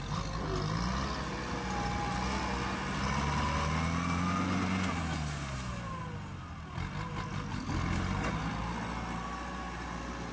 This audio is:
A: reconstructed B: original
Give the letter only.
B